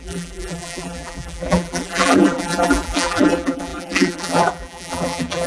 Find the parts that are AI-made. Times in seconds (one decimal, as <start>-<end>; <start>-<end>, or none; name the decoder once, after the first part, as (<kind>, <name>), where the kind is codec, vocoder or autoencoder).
0.0-5.5 (vocoder, BigVGAN v2)